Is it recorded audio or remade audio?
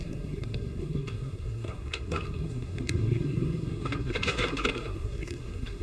remade